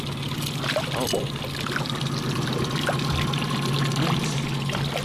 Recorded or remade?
recorded